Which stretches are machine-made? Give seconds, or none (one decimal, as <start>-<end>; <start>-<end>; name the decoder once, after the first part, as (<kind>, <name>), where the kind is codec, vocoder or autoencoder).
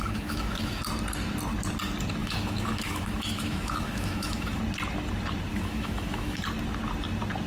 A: 0.0-0.8 (autoencoder, DAC-VAE); 2.2-4.6; 5.5-6.4